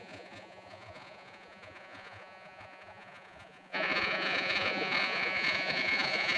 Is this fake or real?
fake